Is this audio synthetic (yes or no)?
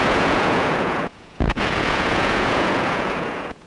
yes